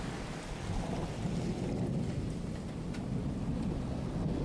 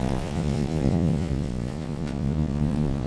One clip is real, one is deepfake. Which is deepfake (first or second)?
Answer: second